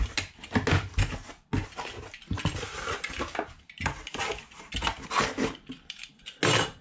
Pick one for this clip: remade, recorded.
recorded